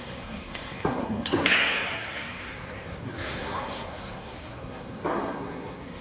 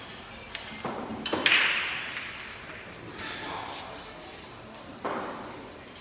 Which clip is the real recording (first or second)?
second